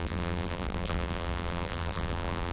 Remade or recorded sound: remade